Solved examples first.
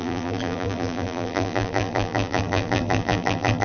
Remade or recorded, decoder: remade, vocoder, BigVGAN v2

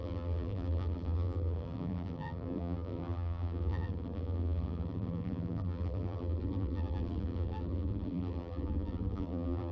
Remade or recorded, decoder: remade, vocoder, BigVGAN v2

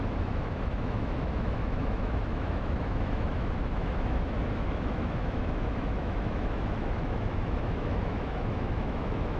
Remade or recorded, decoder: remade, autoencoder, DAC-VAE